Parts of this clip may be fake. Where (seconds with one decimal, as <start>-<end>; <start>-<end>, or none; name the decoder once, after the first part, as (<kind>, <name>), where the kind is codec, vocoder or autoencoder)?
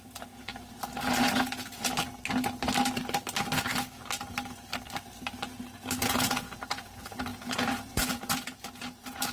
0.0-0.5 (vocoder, Vocos); 1.2-1.9; 6.0-9.3